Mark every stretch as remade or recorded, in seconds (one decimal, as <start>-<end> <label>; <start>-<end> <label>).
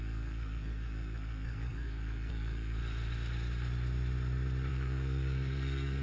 0.0-2.8 remade; 2.8-4.7 recorded; 4.7-6.0 remade